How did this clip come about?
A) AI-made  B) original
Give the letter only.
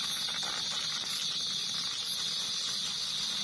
B